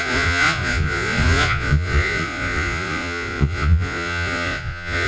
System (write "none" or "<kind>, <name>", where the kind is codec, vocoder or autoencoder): vocoder, Vocos